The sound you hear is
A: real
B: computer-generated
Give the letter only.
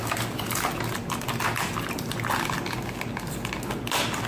A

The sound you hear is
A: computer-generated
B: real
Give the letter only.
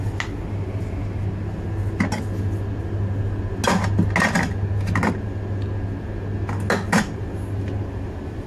B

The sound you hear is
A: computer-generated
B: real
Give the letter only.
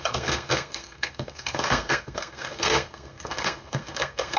A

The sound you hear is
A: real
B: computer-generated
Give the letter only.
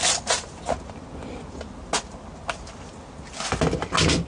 A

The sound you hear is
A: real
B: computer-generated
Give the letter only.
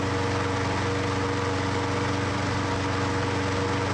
A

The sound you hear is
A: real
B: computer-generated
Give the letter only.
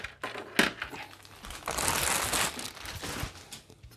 A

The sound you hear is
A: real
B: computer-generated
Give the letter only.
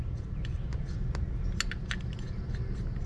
A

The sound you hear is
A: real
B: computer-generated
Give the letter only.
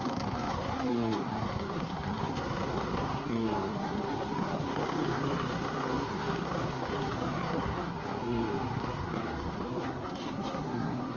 B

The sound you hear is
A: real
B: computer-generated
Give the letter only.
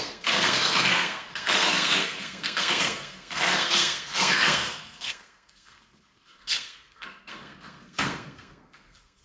B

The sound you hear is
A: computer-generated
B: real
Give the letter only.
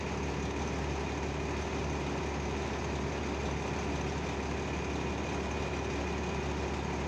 B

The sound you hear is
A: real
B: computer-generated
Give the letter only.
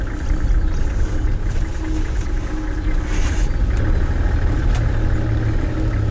A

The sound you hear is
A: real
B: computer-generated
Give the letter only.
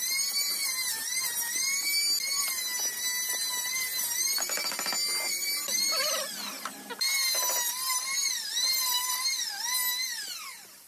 A